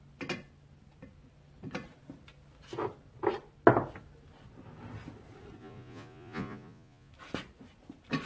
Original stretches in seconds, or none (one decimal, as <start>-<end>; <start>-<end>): 0.0-5.6; 7.1-8.3

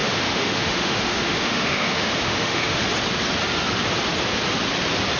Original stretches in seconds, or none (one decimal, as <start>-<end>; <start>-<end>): 2.8-5.2

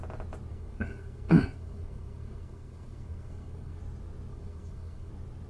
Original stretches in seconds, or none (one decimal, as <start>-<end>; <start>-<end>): 0.0-0.5; 3.8-4.3; 5.1-5.5

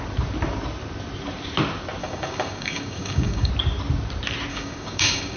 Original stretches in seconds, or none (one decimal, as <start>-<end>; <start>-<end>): 0.0-2.0; 3.5-4.5

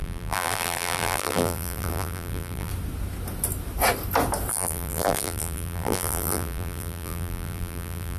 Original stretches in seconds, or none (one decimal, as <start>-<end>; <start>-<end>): 2.7-4.5

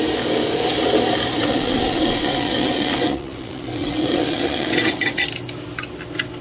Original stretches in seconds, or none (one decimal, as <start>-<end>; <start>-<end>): 0.0-1.4; 5.2-6.4